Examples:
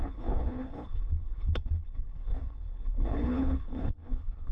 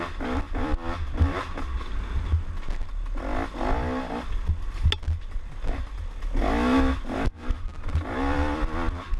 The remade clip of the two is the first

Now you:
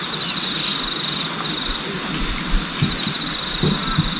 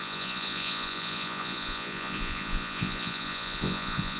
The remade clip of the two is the second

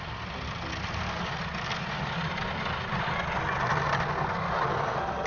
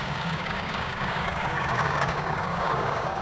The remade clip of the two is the second